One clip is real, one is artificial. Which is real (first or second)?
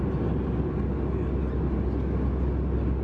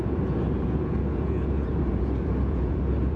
first